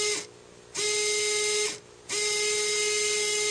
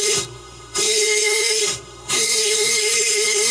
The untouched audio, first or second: first